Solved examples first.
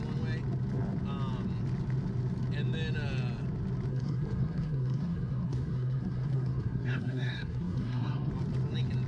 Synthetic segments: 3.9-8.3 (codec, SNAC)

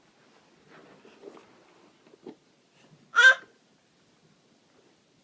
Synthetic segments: none

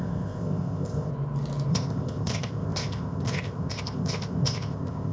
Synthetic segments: 0.0-1.1 (codec, ZipCodec); 1.7-5.1

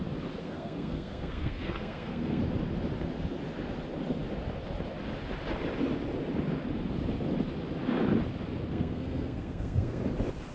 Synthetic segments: 0.4-2.4 (codec, SNAC); 8.7-10.0